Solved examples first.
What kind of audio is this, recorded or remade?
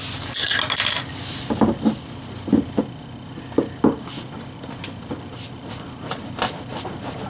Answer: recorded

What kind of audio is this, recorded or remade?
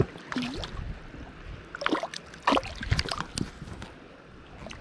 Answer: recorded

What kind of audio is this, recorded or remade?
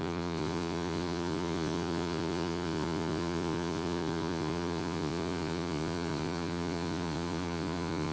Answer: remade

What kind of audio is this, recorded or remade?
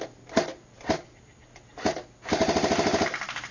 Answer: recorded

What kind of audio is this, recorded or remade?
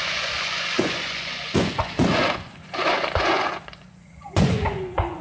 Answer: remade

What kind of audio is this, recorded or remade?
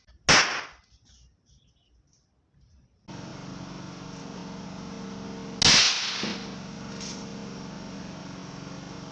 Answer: recorded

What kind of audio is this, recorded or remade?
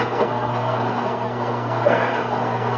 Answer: remade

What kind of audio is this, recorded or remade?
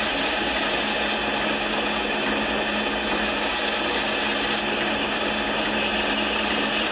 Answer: recorded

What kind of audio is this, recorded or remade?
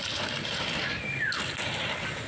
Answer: recorded